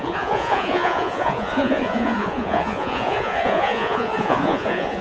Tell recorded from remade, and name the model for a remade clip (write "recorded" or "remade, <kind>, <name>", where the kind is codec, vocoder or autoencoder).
remade, vocoder, Vocos